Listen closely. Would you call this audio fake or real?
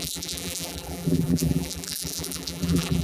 fake